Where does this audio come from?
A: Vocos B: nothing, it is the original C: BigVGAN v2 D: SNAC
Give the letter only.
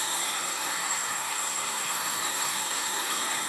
D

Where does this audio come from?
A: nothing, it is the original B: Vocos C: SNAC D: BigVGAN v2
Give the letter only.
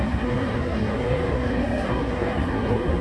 C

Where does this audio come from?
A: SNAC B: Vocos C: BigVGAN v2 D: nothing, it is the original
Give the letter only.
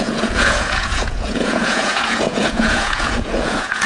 B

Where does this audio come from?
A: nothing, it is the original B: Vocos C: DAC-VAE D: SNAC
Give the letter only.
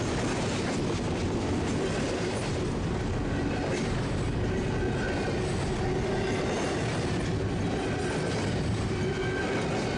A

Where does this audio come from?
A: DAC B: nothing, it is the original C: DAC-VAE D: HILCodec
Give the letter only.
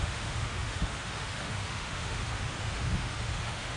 C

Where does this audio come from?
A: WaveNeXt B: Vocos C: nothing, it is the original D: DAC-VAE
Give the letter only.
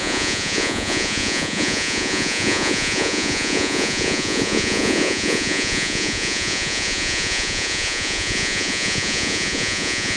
B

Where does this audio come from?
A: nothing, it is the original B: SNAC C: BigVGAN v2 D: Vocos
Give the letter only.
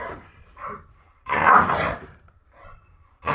C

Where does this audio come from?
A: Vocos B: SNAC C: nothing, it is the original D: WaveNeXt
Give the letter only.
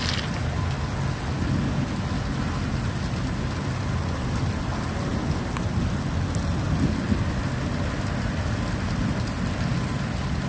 C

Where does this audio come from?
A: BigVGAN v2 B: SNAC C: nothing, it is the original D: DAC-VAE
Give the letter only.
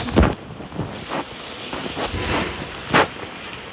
A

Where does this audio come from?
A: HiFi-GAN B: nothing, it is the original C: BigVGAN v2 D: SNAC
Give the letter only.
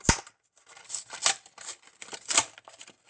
B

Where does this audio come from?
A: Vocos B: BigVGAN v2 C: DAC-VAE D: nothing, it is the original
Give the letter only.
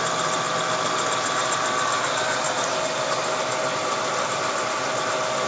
D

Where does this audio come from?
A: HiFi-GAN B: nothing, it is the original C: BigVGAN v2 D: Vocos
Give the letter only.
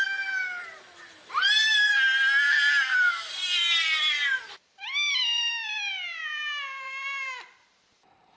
C